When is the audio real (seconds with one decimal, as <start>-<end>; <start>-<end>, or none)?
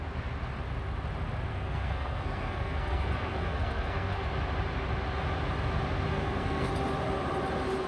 0.0-1.5; 4.2-6.1; 6.7-7.9